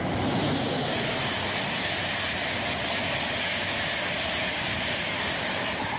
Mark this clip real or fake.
real